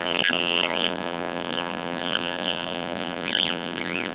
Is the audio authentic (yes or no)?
no